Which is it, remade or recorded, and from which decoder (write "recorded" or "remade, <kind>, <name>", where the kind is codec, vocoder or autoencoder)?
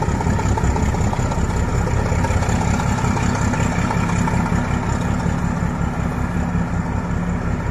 recorded